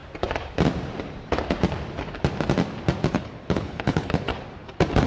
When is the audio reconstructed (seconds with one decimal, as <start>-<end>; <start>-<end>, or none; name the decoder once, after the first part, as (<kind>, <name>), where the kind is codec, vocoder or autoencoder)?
3.1-4.3 (codec, HILCodec)